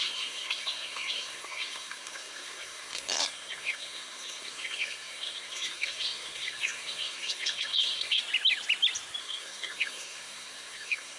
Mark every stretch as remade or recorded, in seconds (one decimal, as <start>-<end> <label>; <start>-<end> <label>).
0.0-8.2 remade; 8.2-9.2 recorded; 9.2-11.2 remade